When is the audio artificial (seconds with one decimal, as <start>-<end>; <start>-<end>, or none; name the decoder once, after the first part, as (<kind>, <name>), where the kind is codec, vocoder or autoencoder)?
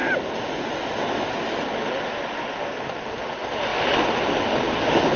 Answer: none